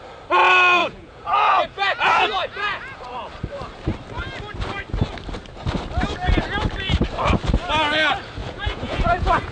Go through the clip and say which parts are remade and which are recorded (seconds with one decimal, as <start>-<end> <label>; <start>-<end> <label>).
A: 0.0-0.8 recorded; 0.8-3.0 remade; 3.0-8.4 recorded; 8.4-9.5 remade